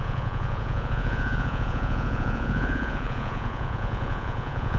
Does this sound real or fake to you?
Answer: fake